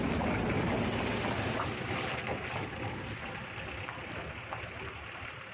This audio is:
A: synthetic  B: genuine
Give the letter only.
B